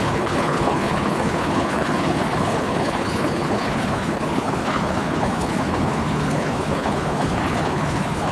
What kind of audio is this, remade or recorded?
remade